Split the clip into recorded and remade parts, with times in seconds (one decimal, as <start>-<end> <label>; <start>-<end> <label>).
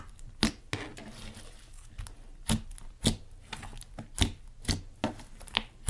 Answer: 0.0-5.9 recorded